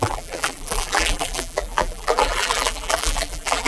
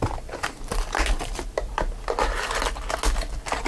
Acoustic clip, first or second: second